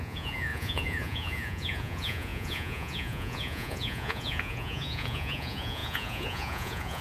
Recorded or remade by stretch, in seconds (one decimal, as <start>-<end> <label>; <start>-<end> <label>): 0.0-7.0 remade